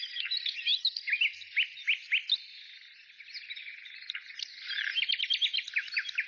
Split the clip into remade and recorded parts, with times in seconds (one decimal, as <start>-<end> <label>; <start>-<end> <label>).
0.0-6.3 recorded